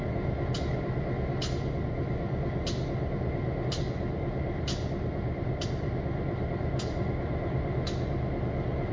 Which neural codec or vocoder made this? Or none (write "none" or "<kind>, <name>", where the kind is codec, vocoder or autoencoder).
none